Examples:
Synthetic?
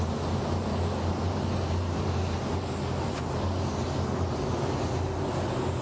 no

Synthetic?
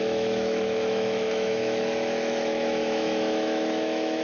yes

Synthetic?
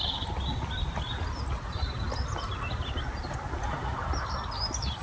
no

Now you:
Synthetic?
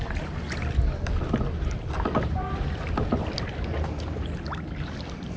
no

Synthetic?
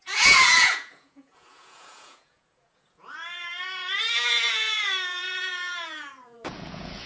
yes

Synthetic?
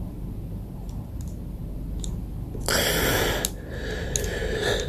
no